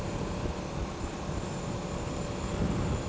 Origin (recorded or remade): recorded